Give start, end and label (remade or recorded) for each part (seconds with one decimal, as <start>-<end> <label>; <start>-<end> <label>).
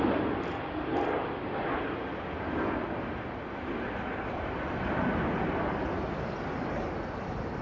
0.0-7.6 recorded